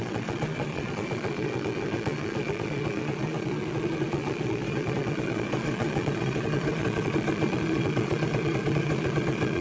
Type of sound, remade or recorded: remade